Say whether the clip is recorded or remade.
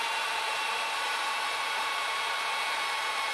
remade